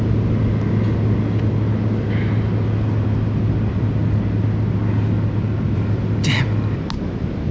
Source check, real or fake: real